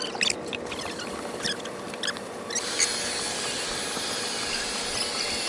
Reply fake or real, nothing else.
real